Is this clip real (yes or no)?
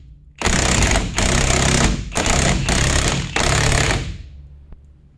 yes